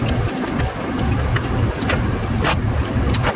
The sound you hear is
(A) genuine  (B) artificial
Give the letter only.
A